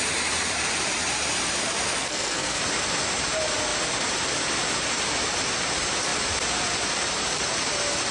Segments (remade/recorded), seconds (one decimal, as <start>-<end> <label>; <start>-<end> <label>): 0.0-2.0 recorded; 2.0-2.6 remade; 2.6-8.1 recorded